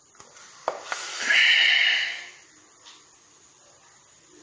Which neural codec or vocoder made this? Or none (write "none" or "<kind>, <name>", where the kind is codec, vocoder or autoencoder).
none